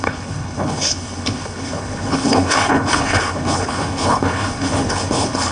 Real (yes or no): no